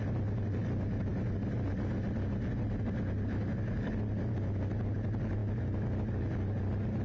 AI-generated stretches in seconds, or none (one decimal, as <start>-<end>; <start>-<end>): none